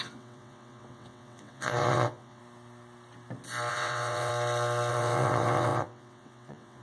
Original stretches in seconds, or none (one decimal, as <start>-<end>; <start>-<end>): 2.4-3.7; 4.3-4.9